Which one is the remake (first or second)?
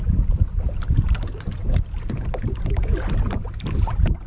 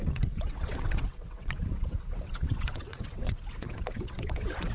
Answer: second